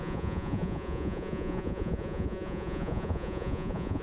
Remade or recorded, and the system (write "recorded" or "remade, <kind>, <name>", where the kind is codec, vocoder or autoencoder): remade, vocoder, Vocos